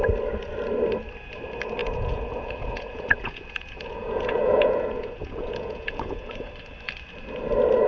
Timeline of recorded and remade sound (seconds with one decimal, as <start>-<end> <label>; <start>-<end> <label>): 0.0-1.8 recorded; 1.8-6.5 remade; 6.5-7.9 recorded